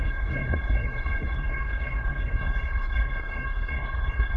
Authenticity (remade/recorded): remade